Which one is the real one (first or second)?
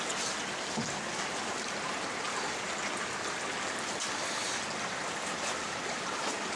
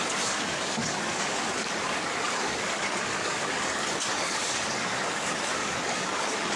first